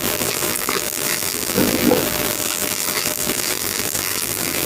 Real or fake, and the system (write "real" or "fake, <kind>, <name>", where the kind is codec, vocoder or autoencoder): fake, vocoder, BigVGAN v2